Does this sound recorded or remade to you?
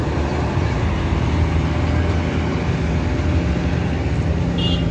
recorded